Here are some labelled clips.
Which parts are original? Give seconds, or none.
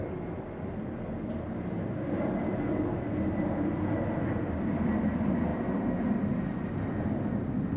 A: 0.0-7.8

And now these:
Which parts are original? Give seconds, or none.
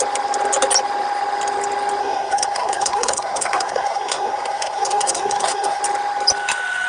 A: 0.0-2.0; 5.8-6.9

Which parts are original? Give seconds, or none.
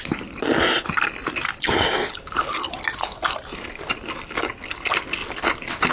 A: 0.0-5.9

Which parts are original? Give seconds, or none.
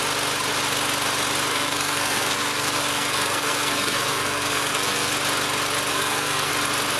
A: 0.0-1.5; 5.1-5.9; 6.5-7.0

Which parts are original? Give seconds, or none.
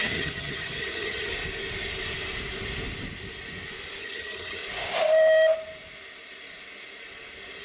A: 1.3-4.0; 4.6-7.6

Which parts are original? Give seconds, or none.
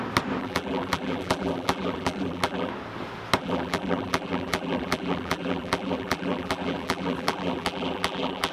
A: 0.0-0.4; 2.7-3.4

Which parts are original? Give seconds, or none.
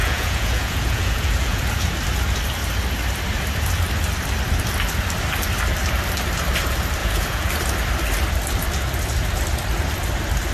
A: 1.6-7.0; 7.5-10.5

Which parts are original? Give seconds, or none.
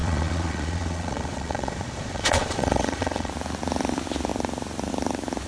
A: 3.3-5.5